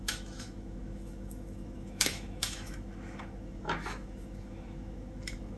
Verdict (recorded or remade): remade